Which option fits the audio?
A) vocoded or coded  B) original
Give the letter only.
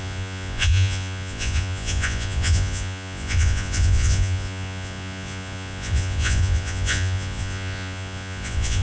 A